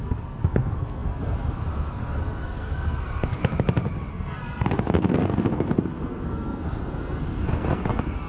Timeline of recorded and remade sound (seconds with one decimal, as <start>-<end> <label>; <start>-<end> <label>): 0.0-3.4 remade; 3.4-4.1 recorded; 4.1-8.3 remade

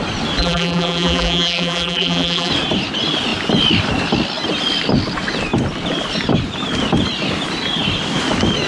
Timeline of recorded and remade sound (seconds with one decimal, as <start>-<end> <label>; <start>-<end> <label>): 0.0-0.4 recorded; 0.4-2.5 remade; 2.5-8.7 recorded

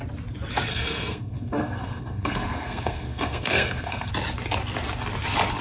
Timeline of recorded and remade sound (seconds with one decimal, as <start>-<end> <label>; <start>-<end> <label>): 0.0-0.7 recorded; 0.7-4.1 remade; 4.1-5.6 recorded

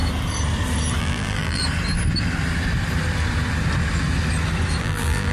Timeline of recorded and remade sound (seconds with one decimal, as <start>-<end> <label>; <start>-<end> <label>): 0.0-1.0 recorded; 1.0-1.6 remade; 1.6-4.8 recorded; 4.8-5.3 remade